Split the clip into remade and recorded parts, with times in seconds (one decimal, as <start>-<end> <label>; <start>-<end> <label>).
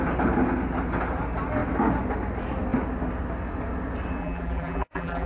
0.0-4.2 recorded; 4.2-5.3 remade